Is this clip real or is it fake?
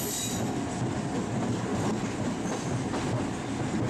real